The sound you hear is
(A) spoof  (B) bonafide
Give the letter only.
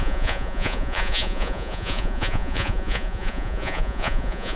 A